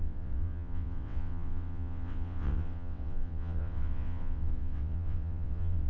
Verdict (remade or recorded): remade